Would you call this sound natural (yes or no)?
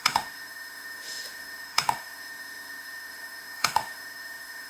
no